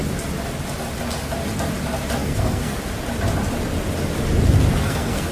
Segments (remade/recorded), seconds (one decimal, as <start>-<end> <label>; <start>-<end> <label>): 0.0-2.2 recorded; 2.2-2.8 remade; 2.8-4.7 recorded; 4.7-5.3 remade